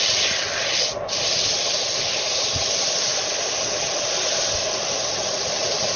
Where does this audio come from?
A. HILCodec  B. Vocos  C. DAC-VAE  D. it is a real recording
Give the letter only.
D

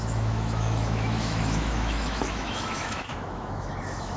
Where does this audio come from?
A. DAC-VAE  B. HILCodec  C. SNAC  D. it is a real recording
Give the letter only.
A